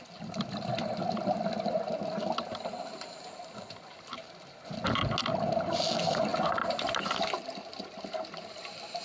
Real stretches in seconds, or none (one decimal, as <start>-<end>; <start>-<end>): 0.0-9.0